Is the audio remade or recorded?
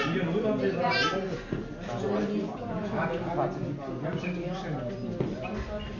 recorded